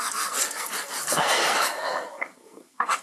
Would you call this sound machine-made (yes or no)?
yes